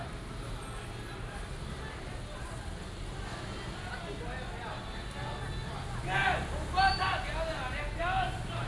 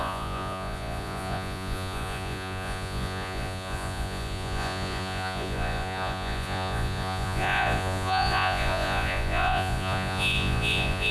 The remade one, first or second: second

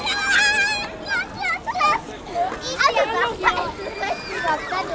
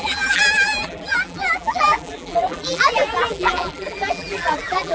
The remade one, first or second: second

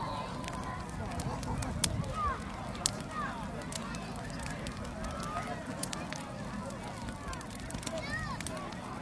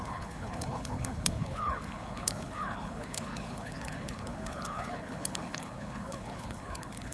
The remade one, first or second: second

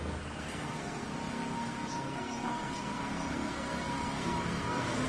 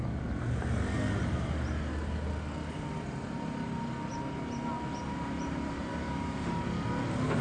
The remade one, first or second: first